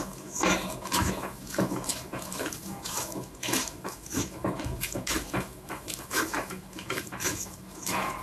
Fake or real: fake